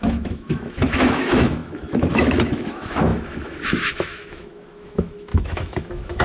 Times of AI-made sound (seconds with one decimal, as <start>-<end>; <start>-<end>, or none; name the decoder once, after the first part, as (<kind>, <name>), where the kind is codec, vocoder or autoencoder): 0.0-6.2 (autoencoder, DAC-VAE)